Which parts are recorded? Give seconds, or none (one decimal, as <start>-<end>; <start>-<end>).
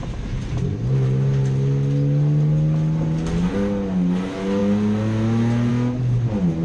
0.0-6.6